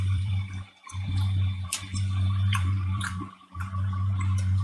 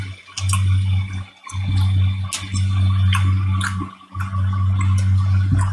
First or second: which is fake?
first